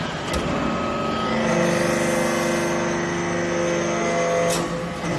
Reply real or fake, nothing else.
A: real